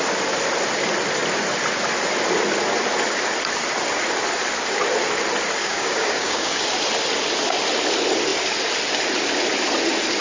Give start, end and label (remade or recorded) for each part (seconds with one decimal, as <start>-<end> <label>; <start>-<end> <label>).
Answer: 0.0-5.6 recorded; 5.6-6.6 remade; 6.6-10.2 recorded